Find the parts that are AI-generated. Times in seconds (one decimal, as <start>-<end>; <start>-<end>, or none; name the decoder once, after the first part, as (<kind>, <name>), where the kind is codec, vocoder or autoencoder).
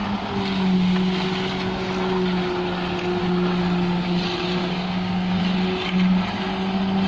4.6-5.4 (codec, DAC)